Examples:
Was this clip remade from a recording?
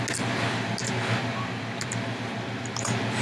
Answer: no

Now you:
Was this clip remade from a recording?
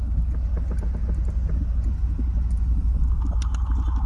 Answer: no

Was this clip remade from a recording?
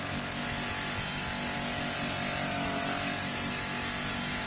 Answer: no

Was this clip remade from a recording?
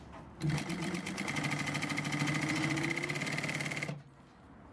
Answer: no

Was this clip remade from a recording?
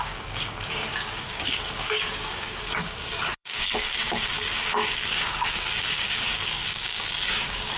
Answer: yes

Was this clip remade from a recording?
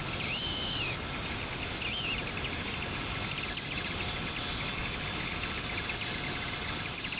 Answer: no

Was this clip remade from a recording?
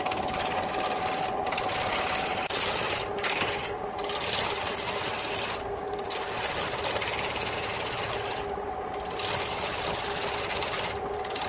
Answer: no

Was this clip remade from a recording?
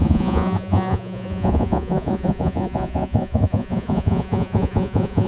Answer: yes